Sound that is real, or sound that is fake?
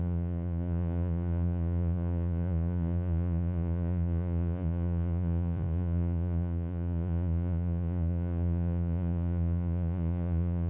fake